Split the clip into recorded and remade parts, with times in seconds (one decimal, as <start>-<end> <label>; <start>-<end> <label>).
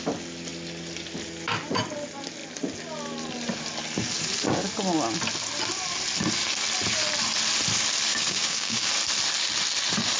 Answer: 0.0-8.1 recorded; 8.1-8.9 remade; 8.9-10.2 recorded